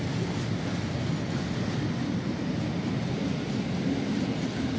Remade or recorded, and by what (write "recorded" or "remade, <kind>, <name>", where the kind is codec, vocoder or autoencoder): recorded